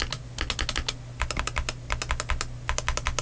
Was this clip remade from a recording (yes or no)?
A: no